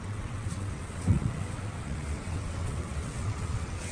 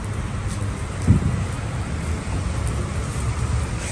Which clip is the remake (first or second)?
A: first